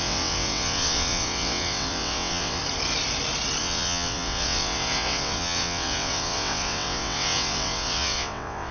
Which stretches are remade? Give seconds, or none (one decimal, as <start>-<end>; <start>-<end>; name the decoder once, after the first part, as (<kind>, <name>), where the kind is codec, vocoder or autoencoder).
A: 0.0-2.6 (vocoder, WaveNeXt); 3.6-8.7